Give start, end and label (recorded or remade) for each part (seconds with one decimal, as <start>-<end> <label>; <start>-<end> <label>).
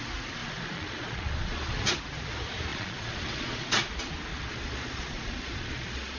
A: 0.0-0.4 recorded; 0.4-1.9 remade; 1.9-2.7 recorded; 2.7-3.7 remade; 3.7-4.3 recorded; 4.3-6.2 remade